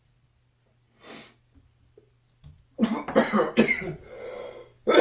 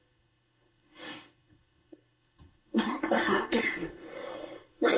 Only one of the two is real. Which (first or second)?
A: first